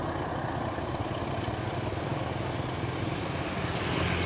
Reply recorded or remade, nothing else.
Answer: recorded